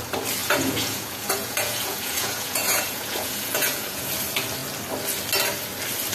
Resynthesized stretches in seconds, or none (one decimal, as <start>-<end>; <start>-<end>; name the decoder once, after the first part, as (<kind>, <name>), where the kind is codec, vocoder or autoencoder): 0.4-4.1 (vocoder, Vocos)